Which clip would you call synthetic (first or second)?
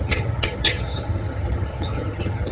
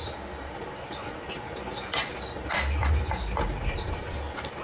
first